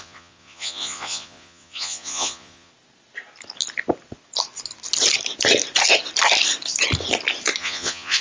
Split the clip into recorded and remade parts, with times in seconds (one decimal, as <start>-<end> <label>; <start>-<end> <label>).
0.0-2.7 remade; 2.7-7.6 recorded; 7.6-8.2 remade